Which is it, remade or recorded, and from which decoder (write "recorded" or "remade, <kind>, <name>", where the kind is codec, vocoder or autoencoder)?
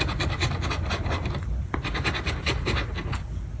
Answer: recorded